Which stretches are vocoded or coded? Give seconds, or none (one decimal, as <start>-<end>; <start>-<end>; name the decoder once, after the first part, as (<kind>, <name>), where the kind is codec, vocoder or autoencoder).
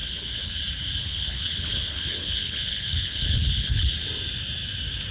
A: 0.0-0.5 (codec, HILCodec); 1.0-3.9